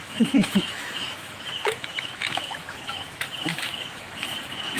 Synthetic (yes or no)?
yes